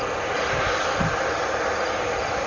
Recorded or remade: recorded